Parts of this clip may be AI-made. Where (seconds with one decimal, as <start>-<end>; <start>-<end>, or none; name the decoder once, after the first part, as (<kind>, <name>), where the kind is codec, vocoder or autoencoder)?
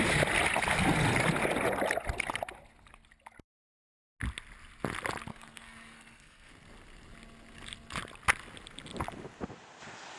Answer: 5.3-6.5 (codec, SNAC)